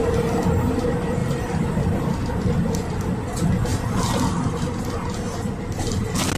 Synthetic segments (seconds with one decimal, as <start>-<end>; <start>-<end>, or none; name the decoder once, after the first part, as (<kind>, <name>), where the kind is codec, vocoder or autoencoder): 1.2-1.8 (vocoder, BigVGAN v2)